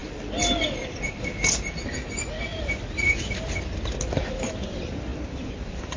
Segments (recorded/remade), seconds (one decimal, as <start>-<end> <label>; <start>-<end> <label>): 0.0-1.3 remade; 1.3-5.1 recorded; 5.1-6.0 remade